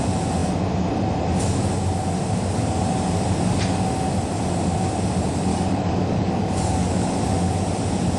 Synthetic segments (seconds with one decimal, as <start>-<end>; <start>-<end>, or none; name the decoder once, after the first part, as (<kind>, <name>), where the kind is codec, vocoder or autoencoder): 5.5-7.1 (codec, DAC)